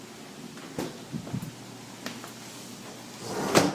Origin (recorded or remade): recorded